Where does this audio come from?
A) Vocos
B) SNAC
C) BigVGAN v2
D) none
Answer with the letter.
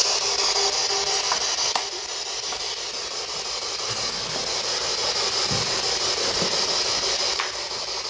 D